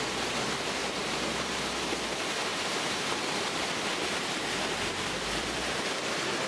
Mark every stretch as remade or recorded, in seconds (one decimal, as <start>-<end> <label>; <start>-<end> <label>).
0.0-0.8 recorded; 0.8-2.0 remade; 2.0-2.5 recorded; 2.5-5.9 remade; 5.9-6.5 recorded